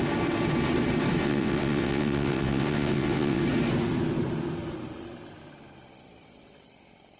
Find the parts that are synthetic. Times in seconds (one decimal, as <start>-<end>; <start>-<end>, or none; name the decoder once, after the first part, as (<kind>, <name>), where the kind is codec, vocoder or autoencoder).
1.2-3.4 (vocoder, WaveNeXt)